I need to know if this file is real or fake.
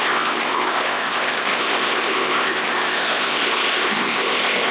fake